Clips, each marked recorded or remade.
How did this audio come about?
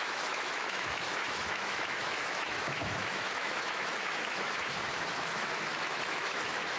remade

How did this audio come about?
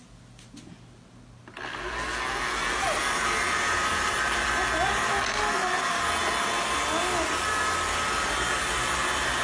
recorded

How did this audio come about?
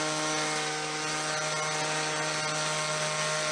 recorded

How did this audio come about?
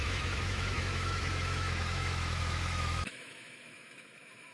remade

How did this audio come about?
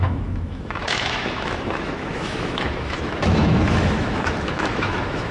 remade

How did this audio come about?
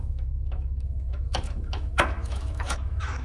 remade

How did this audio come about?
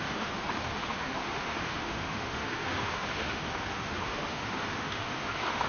remade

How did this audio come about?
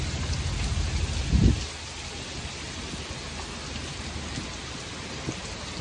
recorded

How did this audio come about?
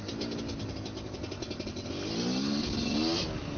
recorded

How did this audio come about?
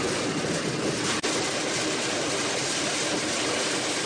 recorded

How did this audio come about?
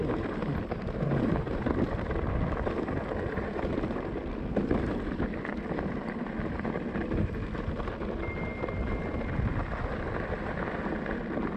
recorded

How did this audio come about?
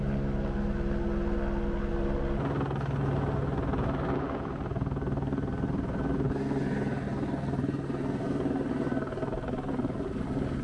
recorded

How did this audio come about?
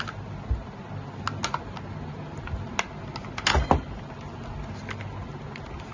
recorded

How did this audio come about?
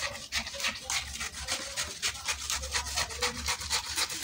recorded